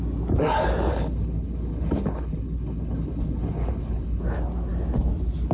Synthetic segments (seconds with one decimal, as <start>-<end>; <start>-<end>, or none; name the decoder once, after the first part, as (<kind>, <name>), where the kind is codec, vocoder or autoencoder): 0.9-4.2 (codec, HILCodec)